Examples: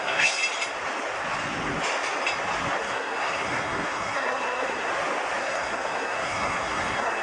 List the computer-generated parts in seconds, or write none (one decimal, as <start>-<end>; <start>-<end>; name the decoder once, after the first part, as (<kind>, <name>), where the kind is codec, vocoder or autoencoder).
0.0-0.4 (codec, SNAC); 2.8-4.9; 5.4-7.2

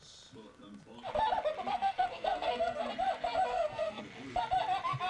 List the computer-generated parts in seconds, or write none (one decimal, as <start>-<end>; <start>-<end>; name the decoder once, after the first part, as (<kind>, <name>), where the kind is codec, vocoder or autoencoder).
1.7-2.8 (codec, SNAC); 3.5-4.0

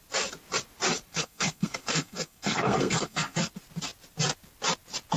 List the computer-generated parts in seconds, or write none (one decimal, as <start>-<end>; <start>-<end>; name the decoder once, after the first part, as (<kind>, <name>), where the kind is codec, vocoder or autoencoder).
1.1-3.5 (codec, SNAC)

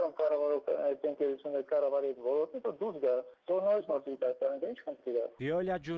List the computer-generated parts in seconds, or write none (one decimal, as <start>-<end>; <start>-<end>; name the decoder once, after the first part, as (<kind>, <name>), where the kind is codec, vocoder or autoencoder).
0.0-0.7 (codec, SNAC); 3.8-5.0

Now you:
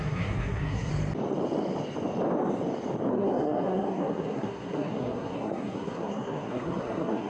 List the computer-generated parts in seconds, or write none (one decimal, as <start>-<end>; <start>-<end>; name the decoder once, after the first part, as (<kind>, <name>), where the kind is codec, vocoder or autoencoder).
0.0-0.9 (codec, SNAC); 3.1-7.3

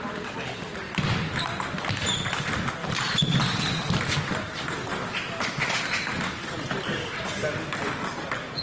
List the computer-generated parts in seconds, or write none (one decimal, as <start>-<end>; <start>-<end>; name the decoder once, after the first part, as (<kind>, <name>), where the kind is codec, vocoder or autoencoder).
none

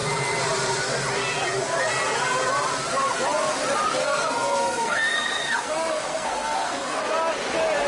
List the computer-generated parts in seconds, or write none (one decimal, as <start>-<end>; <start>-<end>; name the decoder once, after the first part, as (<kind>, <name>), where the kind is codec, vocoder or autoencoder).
4.0-7.0 (codec, SNAC)

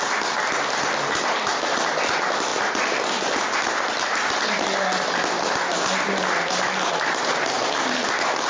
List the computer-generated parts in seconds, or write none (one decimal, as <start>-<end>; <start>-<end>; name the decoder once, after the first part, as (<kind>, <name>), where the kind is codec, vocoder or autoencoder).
none